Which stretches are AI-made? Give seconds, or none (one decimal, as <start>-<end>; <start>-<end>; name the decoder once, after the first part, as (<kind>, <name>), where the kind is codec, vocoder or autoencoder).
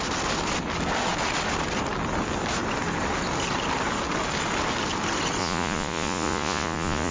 5.4-7.1 (vocoder, Vocos)